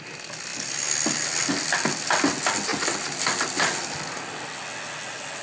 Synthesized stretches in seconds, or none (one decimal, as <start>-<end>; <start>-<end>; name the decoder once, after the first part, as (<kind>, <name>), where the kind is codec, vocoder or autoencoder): none